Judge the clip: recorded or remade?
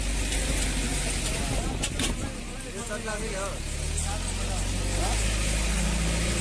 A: recorded